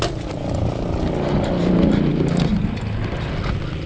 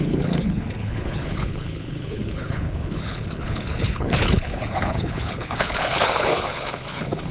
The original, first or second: first